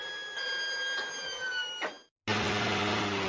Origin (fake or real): real